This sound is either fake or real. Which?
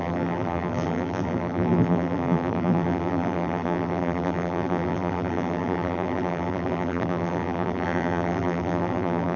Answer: fake